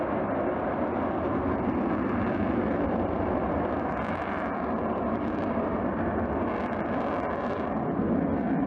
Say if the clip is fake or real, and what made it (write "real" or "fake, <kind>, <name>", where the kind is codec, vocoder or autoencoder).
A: real